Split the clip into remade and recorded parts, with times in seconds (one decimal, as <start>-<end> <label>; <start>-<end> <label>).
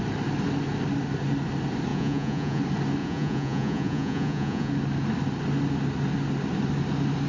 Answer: 0.0-1.9 recorded; 1.9-2.6 remade; 2.6-3.0 recorded; 3.0-4.7 remade; 4.7-7.3 recorded